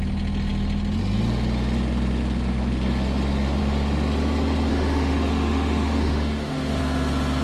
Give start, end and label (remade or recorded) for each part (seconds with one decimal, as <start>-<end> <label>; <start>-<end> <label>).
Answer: 0.0-4.7 recorded; 4.7-6.8 remade; 6.8-7.4 recorded